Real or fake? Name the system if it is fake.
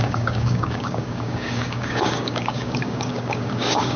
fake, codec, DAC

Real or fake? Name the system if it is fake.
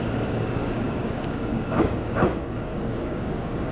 fake, codec, DAC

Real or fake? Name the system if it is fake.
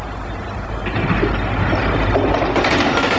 real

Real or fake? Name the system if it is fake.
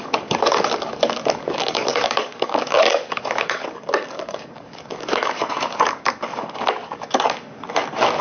fake, codec, DAC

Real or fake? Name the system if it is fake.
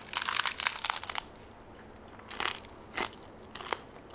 real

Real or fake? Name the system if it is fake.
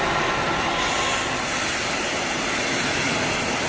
real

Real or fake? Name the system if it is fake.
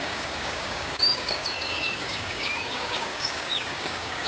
fake, codec, DAC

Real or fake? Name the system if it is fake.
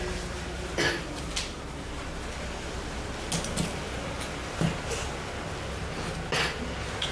real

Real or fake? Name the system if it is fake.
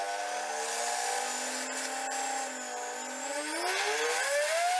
real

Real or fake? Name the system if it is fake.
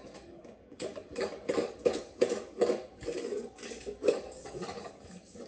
fake, codec, DAC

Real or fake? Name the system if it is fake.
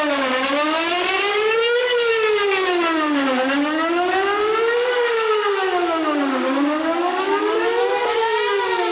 fake, codec, DAC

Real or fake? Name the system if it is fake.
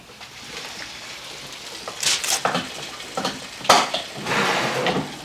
real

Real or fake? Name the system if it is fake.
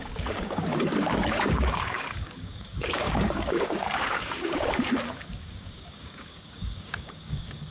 fake, codec, DAC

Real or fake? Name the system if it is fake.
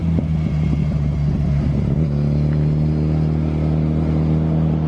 real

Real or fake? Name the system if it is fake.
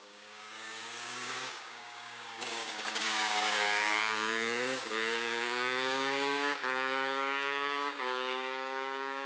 fake, codec, DAC